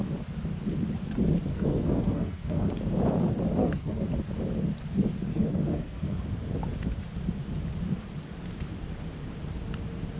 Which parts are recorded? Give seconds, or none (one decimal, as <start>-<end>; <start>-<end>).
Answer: 0.0-1.5; 2.7-3.6; 4.1-5.3; 6.2-10.2